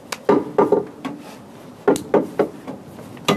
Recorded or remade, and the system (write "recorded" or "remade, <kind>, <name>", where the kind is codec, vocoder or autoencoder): recorded